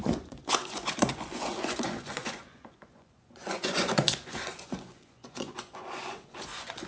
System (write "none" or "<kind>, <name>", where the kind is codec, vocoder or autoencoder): vocoder, Vocos